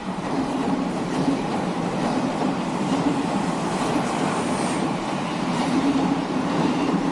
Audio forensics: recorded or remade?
remade